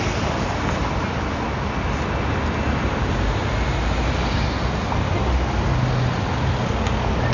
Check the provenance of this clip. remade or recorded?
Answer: recorded